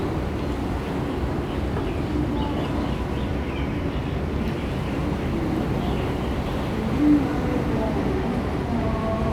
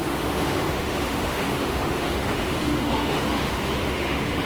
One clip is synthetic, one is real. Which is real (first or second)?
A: first